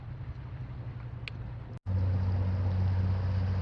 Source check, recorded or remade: recorded